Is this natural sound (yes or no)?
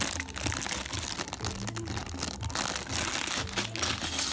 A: yes